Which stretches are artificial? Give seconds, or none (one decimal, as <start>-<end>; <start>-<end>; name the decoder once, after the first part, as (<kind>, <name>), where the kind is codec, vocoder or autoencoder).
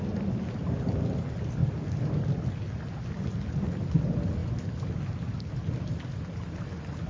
none